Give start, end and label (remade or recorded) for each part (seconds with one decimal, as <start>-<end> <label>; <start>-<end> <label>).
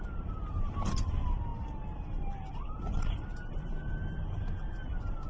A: 0.0-5.3 remade